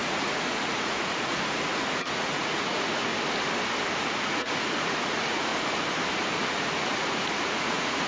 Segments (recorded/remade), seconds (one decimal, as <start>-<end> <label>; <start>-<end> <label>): 0.0-3.0 remade; 3.0-4.0 recorded; 4.0-5.5 remade; 5.5-6.5 recorded; 6.5-8.1 remade